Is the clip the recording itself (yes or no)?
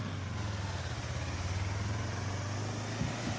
yes